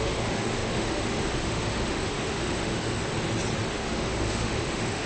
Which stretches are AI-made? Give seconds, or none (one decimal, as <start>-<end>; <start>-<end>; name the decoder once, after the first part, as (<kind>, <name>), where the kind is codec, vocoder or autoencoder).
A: 0.0-3.0 (autoencoder, DAC-VAE); 3.7-5.1